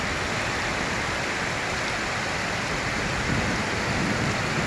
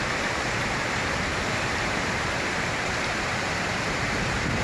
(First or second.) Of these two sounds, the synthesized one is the second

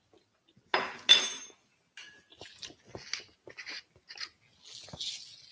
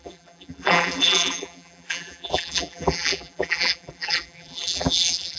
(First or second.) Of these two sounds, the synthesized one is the second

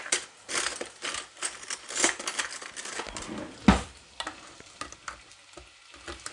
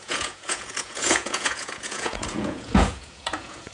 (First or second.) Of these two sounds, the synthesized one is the second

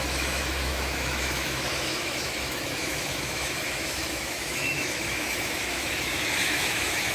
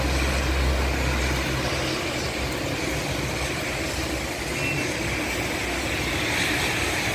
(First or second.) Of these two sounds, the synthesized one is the first